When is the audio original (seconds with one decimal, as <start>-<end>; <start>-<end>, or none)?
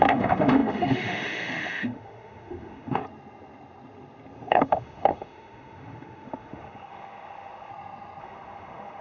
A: 3.0-4.5; 7.7-8.2